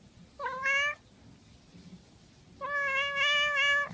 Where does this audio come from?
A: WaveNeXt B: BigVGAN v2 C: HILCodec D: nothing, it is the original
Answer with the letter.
D